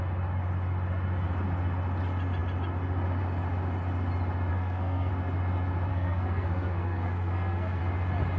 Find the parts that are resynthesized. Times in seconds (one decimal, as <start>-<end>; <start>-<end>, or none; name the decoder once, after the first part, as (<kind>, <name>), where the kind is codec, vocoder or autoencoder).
4.5-5.1 (codec, SNAC); 5.9-7.8